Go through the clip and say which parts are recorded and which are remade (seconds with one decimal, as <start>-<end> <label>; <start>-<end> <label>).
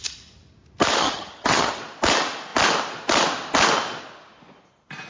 0.0-1.0 recorded; 1.0-1.8 remade; 1.8-5.1 recorded